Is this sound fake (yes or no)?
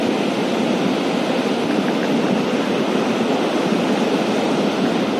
no